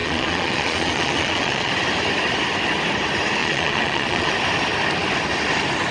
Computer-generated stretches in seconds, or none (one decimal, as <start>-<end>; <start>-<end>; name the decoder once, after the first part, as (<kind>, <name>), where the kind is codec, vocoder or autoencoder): 0.0-1.7 (vocoder, Vocos); 3.4-4.3